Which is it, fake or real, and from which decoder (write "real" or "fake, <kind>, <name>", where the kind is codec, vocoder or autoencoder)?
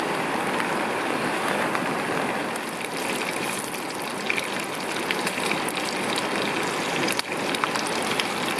real